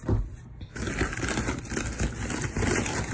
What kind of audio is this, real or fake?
real